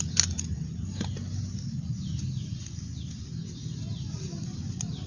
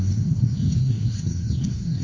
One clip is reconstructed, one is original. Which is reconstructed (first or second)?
second